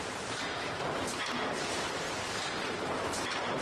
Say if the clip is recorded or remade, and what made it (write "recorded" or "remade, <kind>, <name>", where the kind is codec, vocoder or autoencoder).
remade, vocoder, BigVGAN v2